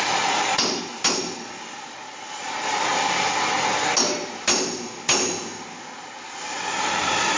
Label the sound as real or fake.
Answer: real